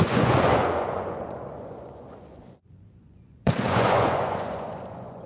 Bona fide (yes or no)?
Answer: no